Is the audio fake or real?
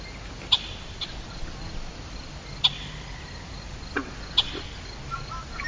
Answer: real